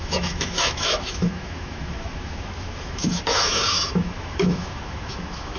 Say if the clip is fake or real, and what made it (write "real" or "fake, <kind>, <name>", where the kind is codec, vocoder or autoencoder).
fake, autoencoder, DAC-VAE